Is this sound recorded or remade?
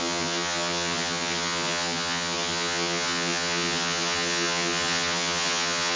remade